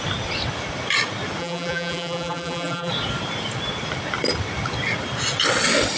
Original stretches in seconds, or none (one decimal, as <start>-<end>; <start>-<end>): 0.0-1.4; 2.9-6.0